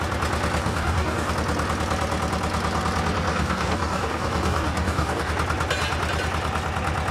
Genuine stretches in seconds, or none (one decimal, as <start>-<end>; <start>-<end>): 0.0-0.6; 1.3-3.3; 5.3-7.1